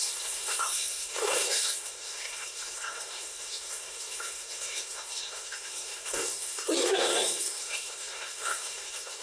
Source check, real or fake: fake